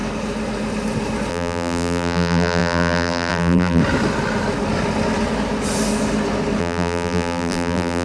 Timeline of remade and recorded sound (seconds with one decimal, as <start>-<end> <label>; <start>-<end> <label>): 0.0-1.3 recorded; 1.3-3.8 remade; 3.8-6.6 recorded; 6.6-8.0 remade